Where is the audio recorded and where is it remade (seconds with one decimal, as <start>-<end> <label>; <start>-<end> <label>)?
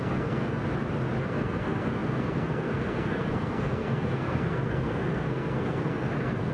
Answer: 0.0-0.6 remade; 0.6-1.2 recorded; 1.2-6.5 remade